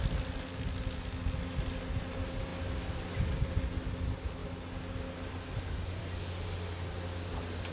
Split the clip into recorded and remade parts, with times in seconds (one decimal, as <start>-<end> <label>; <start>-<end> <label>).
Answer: 0.0-7.7 recorded

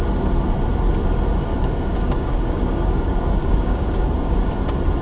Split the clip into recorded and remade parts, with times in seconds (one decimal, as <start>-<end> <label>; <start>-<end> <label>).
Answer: 0.0-1.5 recorded; 1.5-4.5 remade; 4.5-5.0 recorded

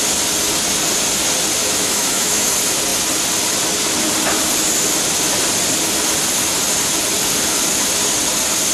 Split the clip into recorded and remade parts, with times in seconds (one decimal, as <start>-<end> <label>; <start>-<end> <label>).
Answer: 0.0-1.6 recorded; 1.6-2.5 remade; 2.5-8.7 recorded

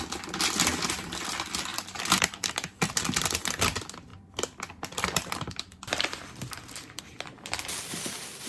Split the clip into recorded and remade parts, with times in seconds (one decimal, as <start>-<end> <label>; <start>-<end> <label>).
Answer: 0.0-1.7 recorded; 1.7-3.6 remade; 3.6-4.1 recorded; 4.1-7.0 remade; 7.0-8.5 recorded

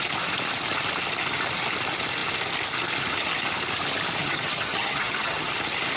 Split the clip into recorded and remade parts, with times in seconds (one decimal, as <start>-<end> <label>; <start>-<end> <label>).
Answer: 0.0-4.2 recorded; 4.2-5.5 remade; 5.5-6.0 recorded